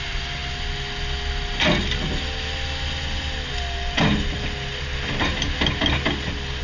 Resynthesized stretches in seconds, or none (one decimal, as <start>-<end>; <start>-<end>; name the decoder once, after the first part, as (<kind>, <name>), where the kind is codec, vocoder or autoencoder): none